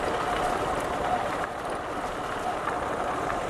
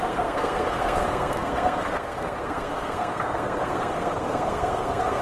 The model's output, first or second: second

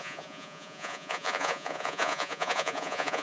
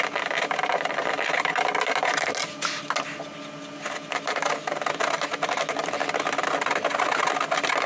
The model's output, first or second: first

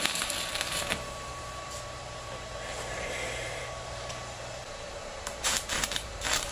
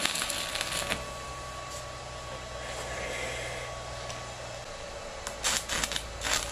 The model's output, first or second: first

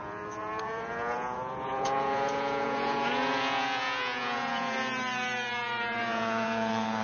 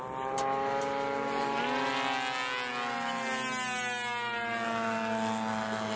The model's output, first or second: first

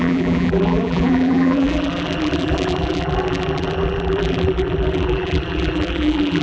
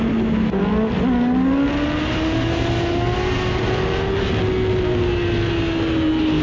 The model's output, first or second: first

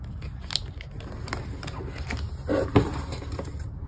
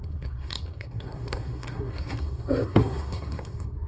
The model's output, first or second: second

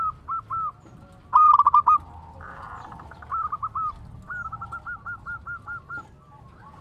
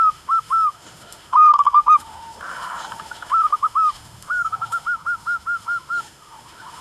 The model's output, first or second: second